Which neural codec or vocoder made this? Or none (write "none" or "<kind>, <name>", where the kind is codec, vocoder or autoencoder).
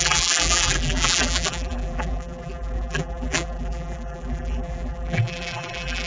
vocoder, BigVGAN v2